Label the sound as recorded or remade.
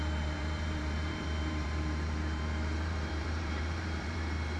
remade